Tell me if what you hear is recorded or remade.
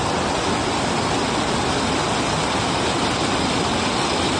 recorded